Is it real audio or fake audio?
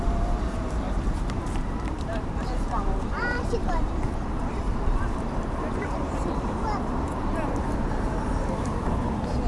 fake